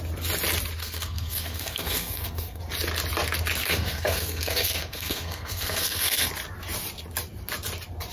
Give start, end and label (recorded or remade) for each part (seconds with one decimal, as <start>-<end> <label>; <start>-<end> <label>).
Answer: 0.0-0.8 recorded; 0.8-2.6 remade; 2.6-3.6 recorded; 3.6-6.3 remade; 6.3-8.1 recorded